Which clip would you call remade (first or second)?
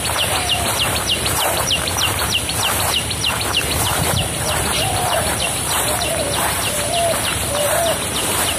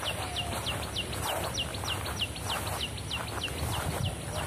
first